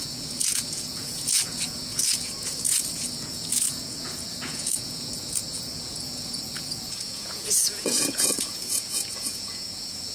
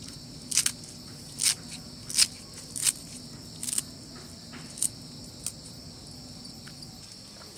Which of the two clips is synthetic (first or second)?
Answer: first